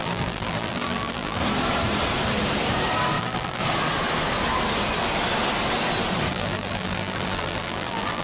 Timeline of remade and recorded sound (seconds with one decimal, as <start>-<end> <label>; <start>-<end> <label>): 0.0-1.4 remade; 1.4-3.2 recorded; 3.2-3.6 remade; 3.6-6.3 recorded; 6.3-8.2 remade